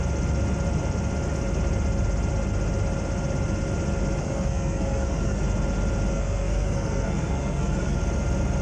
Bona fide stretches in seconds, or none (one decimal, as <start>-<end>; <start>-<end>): 0.0-4.2; 5.4-6.1; 8.0-8.6